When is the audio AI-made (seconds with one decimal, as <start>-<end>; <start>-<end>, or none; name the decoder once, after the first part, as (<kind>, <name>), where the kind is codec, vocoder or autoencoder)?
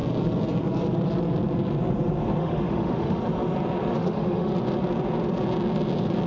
2.4-3.2 (autoencoder, DAC-VAE); 3.9-4.5